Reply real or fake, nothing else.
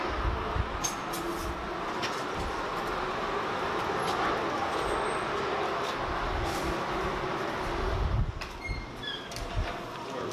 real